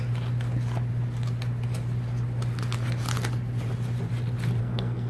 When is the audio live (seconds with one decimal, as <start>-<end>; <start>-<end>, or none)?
0.0-4.6